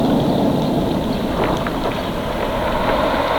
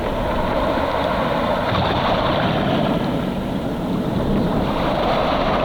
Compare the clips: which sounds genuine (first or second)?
first